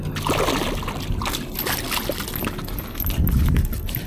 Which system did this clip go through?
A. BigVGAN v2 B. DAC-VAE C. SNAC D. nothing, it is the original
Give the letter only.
D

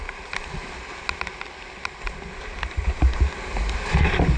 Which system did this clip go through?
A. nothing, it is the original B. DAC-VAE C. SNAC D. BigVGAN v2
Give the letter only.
A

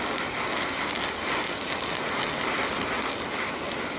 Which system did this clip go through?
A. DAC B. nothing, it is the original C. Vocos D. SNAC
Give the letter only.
B